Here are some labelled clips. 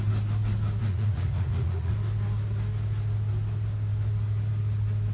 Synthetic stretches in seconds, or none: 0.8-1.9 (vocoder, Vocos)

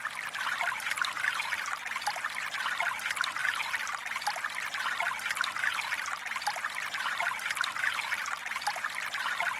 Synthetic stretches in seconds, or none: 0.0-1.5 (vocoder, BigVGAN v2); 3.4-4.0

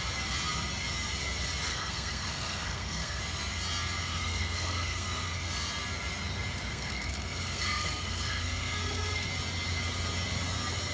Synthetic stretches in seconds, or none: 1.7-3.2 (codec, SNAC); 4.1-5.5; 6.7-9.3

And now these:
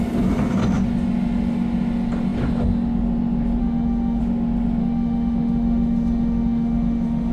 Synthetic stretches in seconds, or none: 3.6-4.2 (autoencoder, DAC-VAE); 4.8-7.3

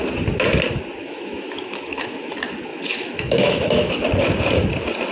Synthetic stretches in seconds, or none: 1.0-2.3 (autoencoder, DAC-VAE); 2.7-3.9

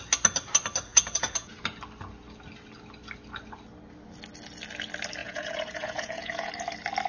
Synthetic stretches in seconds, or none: 0.9-1.5 (vocoder, Vocos); 5.2-6.5

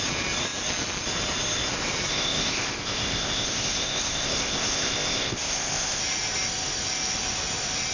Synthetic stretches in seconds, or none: 2.1-6.0 (codec, ZipCodec)

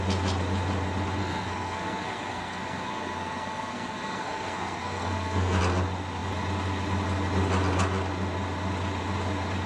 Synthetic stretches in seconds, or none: 1.2-5.6 (codec, SNAC)